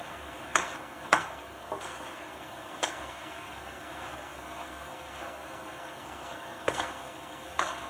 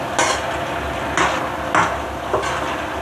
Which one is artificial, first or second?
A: first